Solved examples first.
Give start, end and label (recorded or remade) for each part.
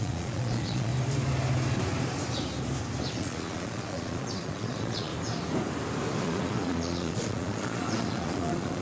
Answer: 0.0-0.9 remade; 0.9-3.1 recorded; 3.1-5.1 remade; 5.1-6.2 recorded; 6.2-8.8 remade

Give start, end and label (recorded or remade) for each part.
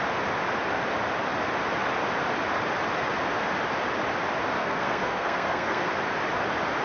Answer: 0.0-4.6 recorded; 4.6-5.9 remade; 5.9-6.8 recorded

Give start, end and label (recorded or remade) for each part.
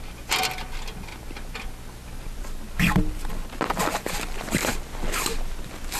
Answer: 0.0-6.0 recorded